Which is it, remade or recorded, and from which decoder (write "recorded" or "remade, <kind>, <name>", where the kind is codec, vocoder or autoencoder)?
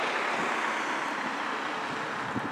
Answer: recorded